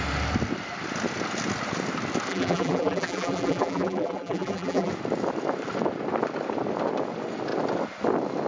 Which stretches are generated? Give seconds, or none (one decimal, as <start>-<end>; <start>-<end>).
2.3-4.9